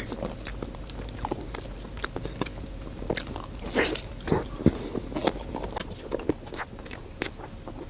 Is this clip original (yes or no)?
yes